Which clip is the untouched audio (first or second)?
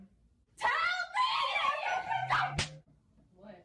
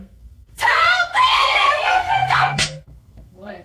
first